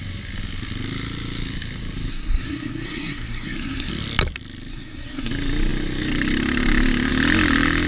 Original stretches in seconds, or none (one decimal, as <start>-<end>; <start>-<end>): 0.0-2.1; 3.9-4.7; 5.3-7.9